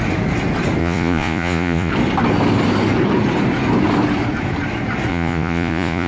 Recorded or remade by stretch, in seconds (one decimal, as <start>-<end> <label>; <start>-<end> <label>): 0.0-0.8 recorded; 0.8-1.9 remade; 1.9-5.1 recorded; 5.1-6.1 remade